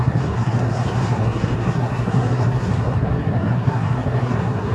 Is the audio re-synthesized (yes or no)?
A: yes